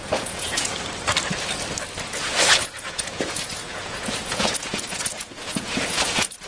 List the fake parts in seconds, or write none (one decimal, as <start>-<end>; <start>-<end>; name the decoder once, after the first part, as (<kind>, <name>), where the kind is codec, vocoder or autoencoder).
0.0-0.7 (vocoder, Vocos); 2.1-6.5